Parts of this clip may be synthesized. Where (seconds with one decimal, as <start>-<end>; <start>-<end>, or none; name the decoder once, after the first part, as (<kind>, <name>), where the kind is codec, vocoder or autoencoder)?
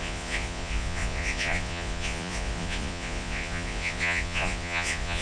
0.0-5.2 (vocoder, Vocos)